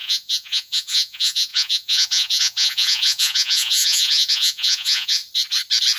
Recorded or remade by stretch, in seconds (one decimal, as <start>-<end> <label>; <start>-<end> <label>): 0.0-5.2 remade; 5.2-6.0 recorded